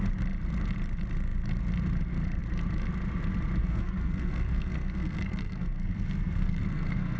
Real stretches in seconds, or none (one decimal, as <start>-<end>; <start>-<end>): 0.0-3.6